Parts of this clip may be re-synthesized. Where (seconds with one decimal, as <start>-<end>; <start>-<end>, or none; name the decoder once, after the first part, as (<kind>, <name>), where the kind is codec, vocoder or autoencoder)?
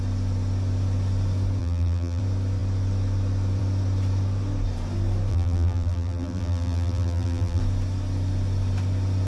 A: 1.6-2.2 (vocoder, BigVGAN v2); 5.3-7.6